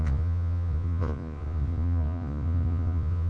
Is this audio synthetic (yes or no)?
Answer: yes